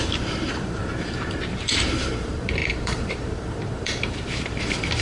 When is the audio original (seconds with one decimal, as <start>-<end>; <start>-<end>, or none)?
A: none